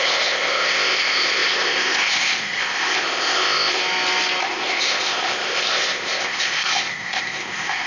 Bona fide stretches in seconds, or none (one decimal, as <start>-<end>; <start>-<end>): 3.8-4.4